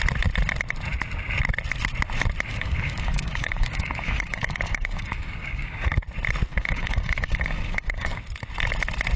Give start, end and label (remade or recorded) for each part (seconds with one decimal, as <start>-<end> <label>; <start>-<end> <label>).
0.0-2.5 recorded; 2.5-6.0 remade; 6.0-6.5 recorded; 6.5-8.2 remade; 8.2-9.2 recorded